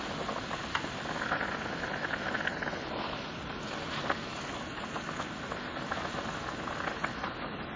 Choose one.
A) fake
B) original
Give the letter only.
B